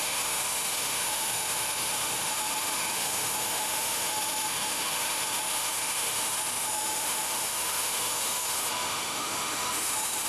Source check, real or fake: fake